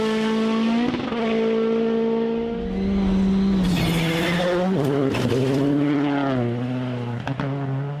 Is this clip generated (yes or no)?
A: no